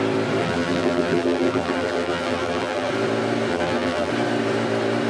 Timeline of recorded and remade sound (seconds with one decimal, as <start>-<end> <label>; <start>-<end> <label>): 0.0-0.4 recorded; 0.4-2.9 remade; 2.9-3.5 recorded; 3.5-4.1 remade; 4.1-5.1 recorded

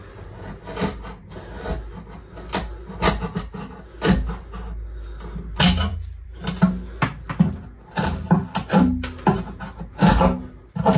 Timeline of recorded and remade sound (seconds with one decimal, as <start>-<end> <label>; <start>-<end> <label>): 0.0-5.9 recorded; 5.9-6.5 remade; 6.5-11.0 recorded